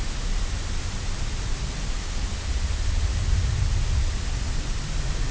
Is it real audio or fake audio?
real